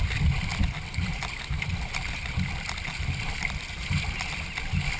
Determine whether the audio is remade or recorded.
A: recorded